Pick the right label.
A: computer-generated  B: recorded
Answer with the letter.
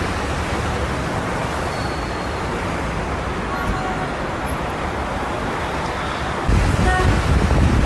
B